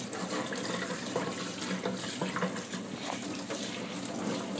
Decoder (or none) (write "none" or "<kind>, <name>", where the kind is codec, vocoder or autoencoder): none